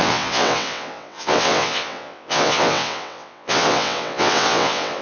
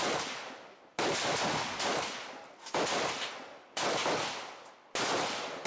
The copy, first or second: first